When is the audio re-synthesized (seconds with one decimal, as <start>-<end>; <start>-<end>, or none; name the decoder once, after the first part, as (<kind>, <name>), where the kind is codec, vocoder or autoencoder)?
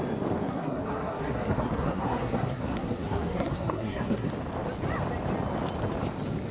0.4-4.3 (codec, SNAC)